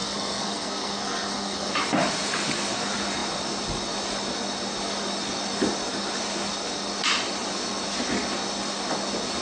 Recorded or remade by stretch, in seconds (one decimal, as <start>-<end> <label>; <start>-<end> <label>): 0.0-1.7 remade; 1.7-9.4 recorded